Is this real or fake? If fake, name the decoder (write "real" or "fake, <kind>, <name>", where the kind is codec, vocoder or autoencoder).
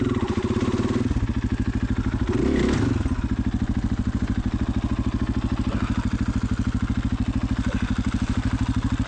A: real